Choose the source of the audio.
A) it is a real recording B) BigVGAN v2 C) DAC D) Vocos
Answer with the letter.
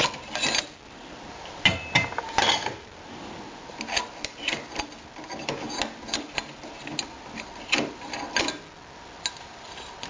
A